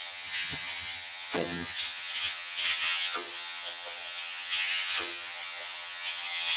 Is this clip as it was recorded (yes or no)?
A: no